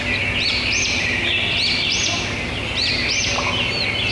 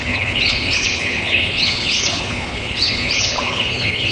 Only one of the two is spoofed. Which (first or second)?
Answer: second